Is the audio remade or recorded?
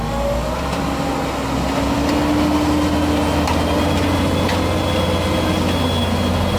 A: recorded